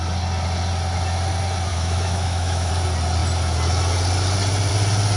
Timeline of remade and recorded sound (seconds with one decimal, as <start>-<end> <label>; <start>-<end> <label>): 0.0-1.7 recorded; 1.7-2.7 remade; 2.7-5.2 recorded